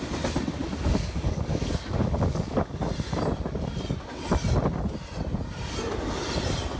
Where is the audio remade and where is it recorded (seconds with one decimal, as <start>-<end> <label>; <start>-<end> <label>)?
0.0-0.6 recorded; 0.6-2.8 remade; 2.8-6.8 recorded